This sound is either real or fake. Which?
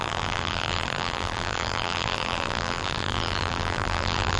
fake